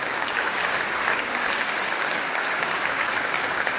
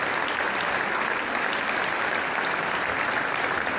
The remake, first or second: first